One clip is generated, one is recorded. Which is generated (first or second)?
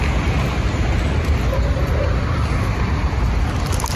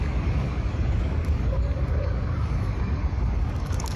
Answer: second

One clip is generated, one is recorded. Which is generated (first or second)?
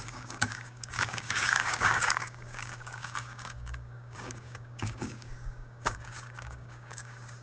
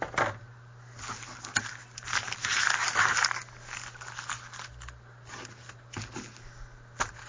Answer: first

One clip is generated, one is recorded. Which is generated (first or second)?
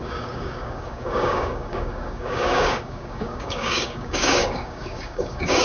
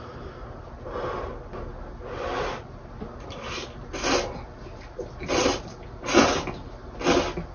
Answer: first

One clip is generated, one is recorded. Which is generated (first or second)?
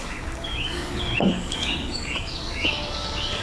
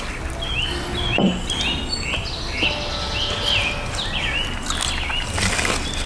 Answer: first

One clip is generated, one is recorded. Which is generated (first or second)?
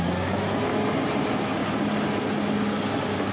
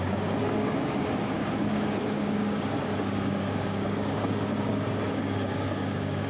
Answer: second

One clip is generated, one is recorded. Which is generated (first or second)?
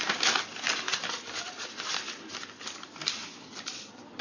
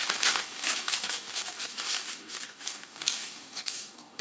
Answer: second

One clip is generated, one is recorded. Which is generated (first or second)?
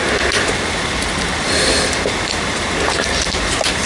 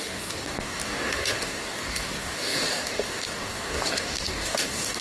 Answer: second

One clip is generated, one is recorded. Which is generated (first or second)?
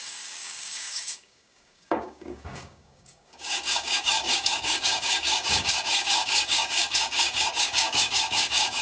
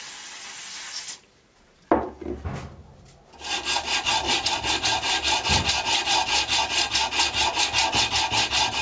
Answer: first